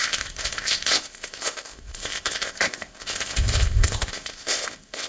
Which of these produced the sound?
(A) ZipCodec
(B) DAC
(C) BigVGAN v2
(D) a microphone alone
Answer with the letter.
A